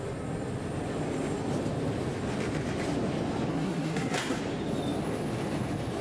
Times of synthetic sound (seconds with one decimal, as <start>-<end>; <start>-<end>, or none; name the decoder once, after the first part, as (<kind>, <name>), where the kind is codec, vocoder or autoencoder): 3.5-4.4 (codec, SNAC)